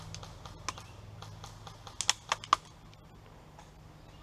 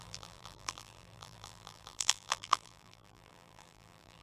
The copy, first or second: second